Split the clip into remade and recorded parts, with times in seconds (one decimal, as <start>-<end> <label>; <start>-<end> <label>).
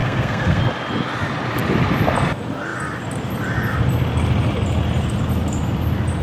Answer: 0.0-0.6 remade; 0.6-6.2 recorded